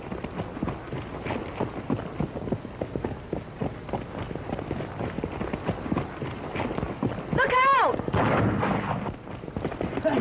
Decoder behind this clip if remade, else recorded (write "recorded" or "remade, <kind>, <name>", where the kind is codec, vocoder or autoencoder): recorded